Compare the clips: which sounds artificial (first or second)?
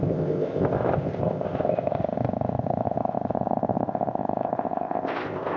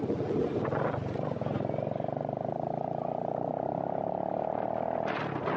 first